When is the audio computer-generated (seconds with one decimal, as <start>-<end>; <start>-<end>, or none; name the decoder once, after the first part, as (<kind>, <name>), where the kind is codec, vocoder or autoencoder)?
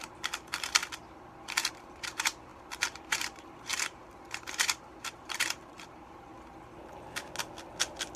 0.0-0.8 (vocoder, BigVGAN v2); 1.7-6.3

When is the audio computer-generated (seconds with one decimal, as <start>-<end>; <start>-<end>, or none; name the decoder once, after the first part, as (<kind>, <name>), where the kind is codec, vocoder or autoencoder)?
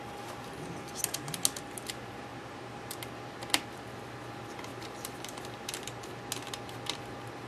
2.3-2.9 (vocoder, BigVGAN v2); 4.7-5.4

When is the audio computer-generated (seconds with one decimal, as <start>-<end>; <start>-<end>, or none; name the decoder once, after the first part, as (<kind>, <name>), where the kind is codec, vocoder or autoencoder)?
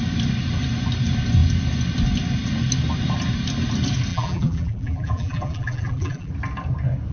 4.1-6.3 (vocoder, BigVGAN v2)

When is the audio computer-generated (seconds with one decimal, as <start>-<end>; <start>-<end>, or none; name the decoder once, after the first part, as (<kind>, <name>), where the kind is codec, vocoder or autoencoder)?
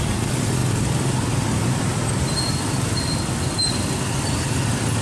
none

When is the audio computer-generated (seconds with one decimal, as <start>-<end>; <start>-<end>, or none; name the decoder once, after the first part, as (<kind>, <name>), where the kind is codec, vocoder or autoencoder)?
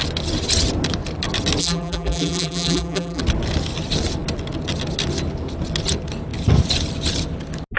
1.6-3.2 (vocoder, BigVGAN v2)